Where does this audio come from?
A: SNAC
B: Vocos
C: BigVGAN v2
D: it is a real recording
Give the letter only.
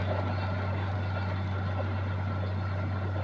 D